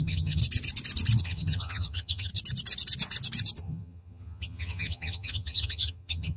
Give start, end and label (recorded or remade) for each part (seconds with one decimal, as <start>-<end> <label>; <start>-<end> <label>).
0.0-0.4 remade; 0.4-1.2 recorded; 1.2-2.3 remade; 2.3-3.6 recorded; 3.6-6.4 remade

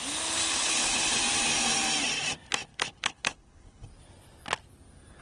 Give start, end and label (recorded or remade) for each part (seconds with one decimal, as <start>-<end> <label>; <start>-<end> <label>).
0.0-0.4 recorded; 0.4-1.2 remade; 1.2-2.7 recorded; 2.7-3.9 remade; 3.9-5.2 recorded

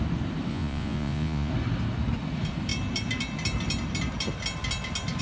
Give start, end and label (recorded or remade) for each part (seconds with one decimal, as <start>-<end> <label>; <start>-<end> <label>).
0.0-0.5 recorded; 0.5-1.5 remade; 1.5-5.2 recorded

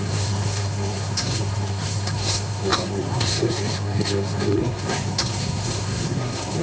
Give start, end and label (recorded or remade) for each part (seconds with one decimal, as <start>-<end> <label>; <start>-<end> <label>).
0.0-6.6 remade

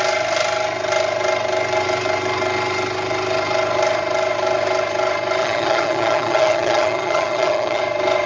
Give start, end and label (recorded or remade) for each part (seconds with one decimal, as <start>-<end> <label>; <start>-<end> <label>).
0.0-5.4 recorded; 5.4-7.8 remade; 7.8-8.3 recorded

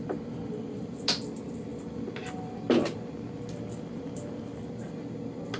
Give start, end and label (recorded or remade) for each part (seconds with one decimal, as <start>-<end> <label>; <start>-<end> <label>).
0.0-5.6 recorded